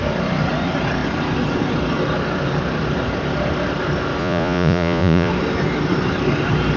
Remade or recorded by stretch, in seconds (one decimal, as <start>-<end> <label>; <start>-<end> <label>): 0.0-4.2 recorded; 4.2-5.3 remade; 5.3-6.8 recorded